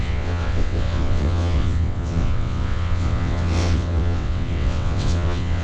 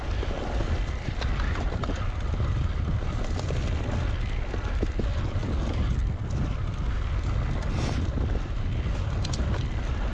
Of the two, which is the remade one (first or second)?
first